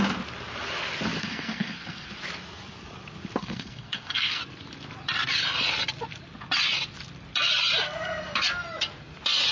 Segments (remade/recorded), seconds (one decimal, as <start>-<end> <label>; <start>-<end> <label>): 0.0-1.2 recorded; 1.2-2.1 remade; 2.1-3.4 recorded; 3.4-4.4 remade; 4.4-9.5 recorded